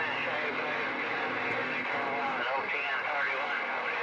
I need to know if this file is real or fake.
real